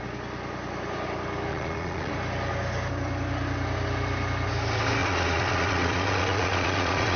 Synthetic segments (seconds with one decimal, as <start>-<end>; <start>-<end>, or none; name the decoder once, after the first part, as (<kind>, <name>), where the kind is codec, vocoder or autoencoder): 1.5-2.1 (vocoder, Vocos); 5.0-7.2